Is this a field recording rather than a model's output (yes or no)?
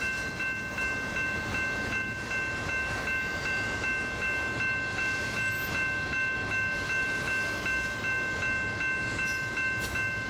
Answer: yes